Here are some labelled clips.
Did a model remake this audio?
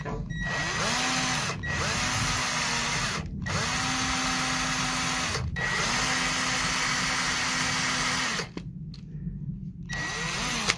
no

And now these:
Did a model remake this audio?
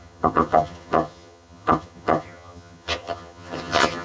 yes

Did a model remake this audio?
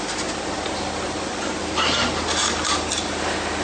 no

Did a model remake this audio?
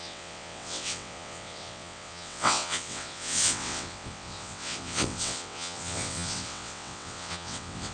yes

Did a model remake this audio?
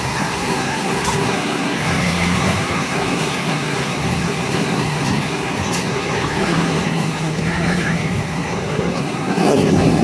yes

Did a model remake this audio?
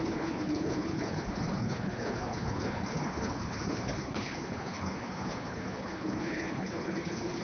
yes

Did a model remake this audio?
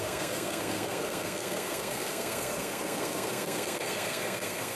yes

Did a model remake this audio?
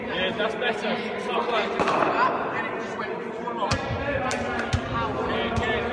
no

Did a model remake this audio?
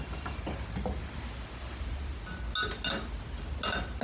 no